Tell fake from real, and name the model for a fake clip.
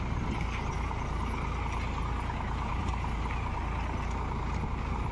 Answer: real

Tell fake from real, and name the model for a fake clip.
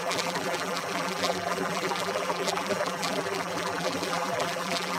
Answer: fake, vocoder, BigVGAN v2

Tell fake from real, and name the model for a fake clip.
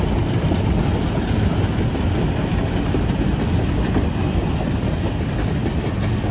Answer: real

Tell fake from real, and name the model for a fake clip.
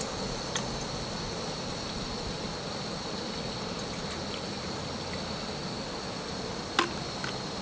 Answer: real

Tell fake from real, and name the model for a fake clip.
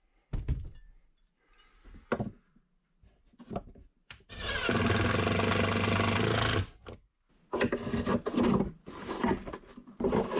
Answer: real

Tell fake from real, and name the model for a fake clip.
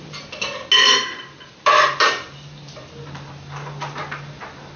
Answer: real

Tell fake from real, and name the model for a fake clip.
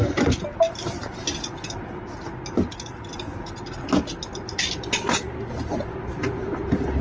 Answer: real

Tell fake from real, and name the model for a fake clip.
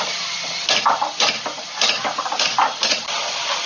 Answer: real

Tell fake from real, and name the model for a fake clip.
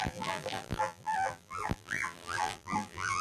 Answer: fake, vocoder, BigVGAN v2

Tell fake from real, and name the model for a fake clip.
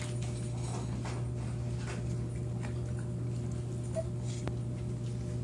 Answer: real